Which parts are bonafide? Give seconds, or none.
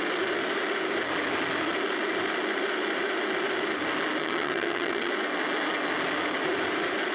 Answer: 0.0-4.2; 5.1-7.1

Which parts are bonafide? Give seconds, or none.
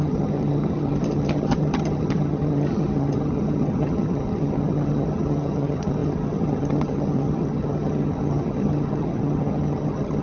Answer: none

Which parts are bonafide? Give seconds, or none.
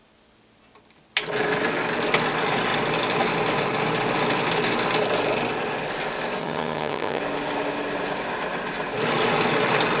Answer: 0.0-6.4; 7.2-10.0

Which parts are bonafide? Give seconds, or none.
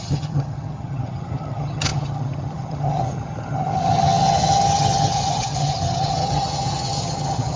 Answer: none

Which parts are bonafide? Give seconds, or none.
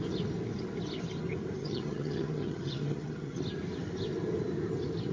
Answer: 0.0-1.6; 3.4-5.1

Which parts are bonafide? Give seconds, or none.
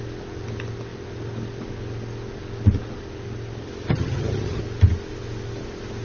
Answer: 0.0-3.9; 4.6-6.0